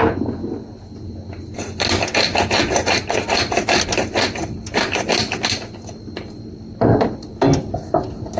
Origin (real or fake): real